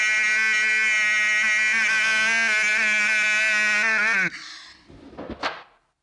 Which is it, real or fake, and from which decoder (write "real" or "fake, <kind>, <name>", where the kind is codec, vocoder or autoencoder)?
real